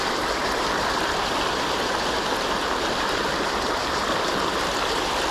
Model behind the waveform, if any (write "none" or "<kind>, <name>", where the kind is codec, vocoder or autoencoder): none